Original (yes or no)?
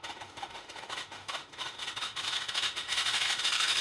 no